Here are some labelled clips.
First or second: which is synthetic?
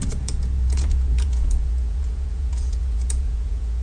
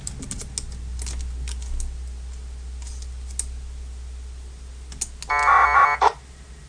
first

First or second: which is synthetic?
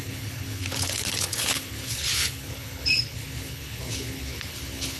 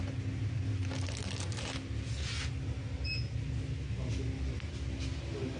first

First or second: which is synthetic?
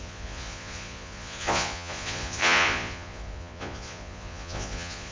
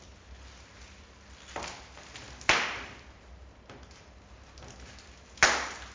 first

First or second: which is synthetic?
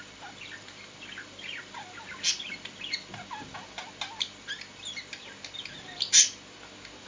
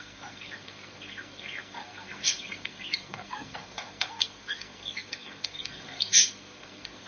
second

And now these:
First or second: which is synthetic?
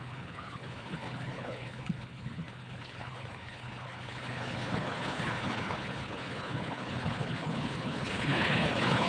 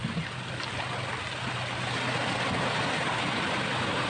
first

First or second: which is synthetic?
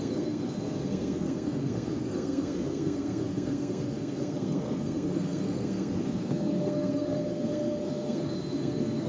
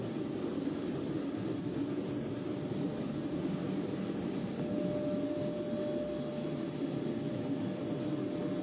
first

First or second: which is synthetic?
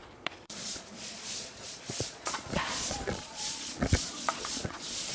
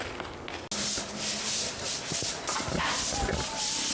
first